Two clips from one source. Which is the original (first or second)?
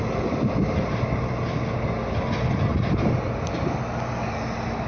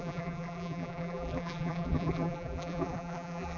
first